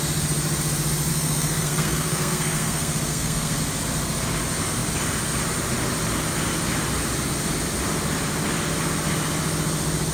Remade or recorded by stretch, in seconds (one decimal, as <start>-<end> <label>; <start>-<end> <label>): 0.0-1.1 recorded; 1.1-3.6 remade; 3.6-10.1 recorded